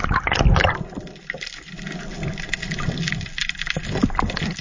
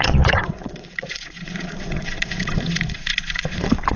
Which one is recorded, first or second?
first